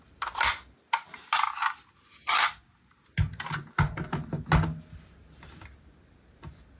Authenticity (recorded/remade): recorded